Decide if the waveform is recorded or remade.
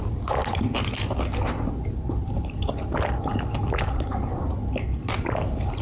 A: remade